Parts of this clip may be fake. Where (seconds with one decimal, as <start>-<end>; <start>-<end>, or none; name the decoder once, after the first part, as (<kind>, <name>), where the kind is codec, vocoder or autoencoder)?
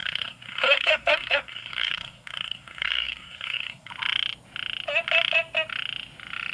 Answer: 0.0-3.9 (codec, SNAC)